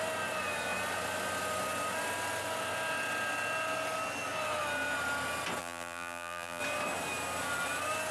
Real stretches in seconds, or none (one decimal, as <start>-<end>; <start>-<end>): 0.0-5.6; 6.6-8.1